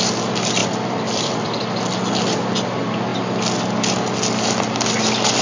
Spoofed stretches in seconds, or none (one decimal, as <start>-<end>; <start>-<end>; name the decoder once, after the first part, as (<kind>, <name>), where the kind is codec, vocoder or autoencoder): 0.6-1.6 (vocoder, BigVGAN v2)